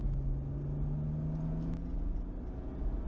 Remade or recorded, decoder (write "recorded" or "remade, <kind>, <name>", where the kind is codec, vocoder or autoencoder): recorded